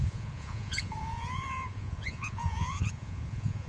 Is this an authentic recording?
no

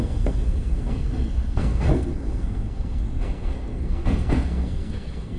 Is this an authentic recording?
no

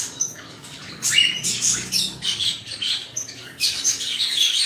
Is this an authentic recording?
no